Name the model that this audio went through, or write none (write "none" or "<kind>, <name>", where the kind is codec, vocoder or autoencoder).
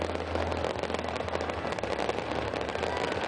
none